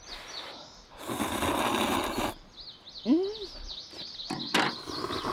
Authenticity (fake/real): real